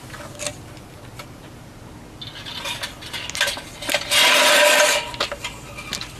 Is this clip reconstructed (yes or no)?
no